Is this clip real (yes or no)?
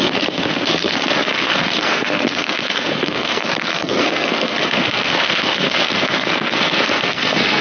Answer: no